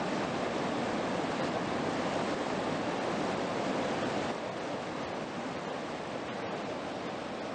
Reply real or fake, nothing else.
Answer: real